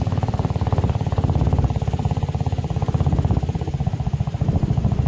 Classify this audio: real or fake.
real